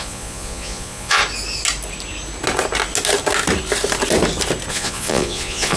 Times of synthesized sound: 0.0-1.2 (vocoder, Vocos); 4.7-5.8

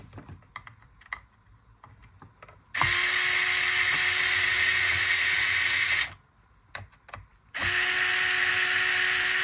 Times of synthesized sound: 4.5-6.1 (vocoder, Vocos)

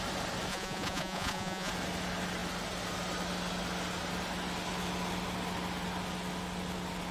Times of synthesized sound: 0.5-1.7 (vocoder, Vocos)

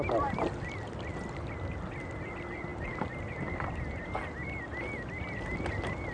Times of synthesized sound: none

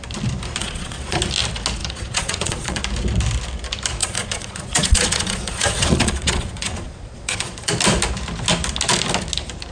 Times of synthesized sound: 0.6-1.2 (vocoder, Vocos); 1.8-2.8; 4.0-7.7